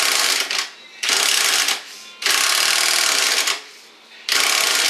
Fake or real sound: real